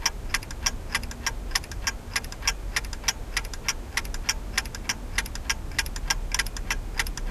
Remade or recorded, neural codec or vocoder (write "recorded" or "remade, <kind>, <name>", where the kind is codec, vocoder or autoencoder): recorded